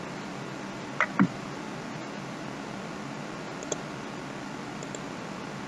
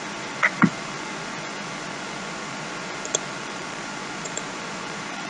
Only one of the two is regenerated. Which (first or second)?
second